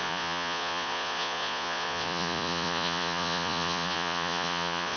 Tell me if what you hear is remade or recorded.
remade